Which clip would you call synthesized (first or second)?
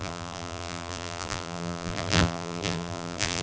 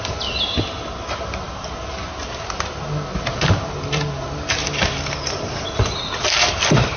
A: first